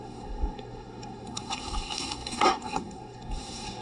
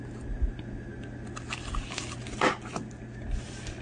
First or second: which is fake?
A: first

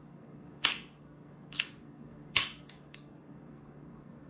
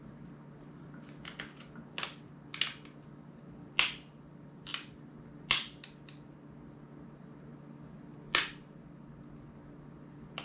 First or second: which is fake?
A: first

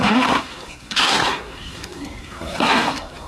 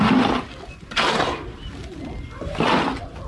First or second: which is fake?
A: first